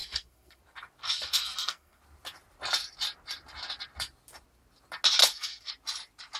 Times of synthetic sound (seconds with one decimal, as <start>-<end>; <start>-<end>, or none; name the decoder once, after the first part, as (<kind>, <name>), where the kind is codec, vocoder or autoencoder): 0.0-0.6 (codec, SNAC); 1.0-2.0; 5.2-5.7